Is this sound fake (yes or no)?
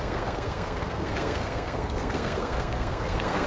yes